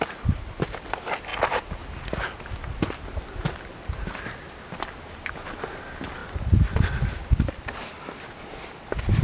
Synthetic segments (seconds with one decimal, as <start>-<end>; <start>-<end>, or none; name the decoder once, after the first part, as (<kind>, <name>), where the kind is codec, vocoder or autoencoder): 6.2-8.0 (vocoder, BigVGAN v2)